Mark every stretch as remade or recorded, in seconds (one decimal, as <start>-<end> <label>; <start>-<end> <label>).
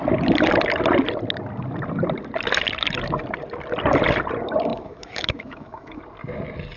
0.0-4.7 recorded; 4.7-6.0 remade; 6.0-6.8 recorded